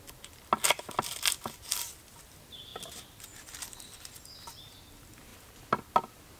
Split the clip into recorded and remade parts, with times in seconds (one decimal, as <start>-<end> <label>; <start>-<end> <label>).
0.0-6.4 recorded